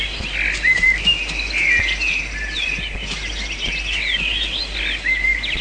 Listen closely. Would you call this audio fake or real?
real